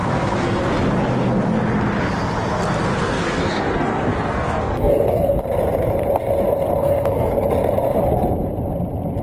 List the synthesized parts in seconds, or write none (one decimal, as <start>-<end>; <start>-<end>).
0.0-0.6; 2.9-5.4; 6.8-7.3

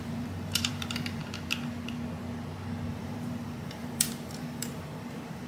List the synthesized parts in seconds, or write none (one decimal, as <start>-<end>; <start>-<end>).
0.0-1.2; 2.9-5.5

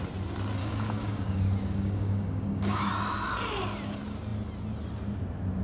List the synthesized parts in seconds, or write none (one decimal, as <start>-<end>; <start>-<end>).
0.6-2.9

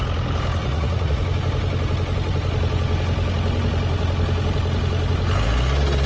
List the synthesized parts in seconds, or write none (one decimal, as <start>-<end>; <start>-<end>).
0.6-1.2

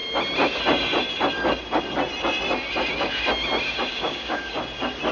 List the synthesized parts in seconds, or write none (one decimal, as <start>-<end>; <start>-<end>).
3.9-4.6

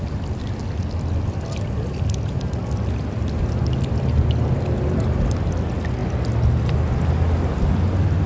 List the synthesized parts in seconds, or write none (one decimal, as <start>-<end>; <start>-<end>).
none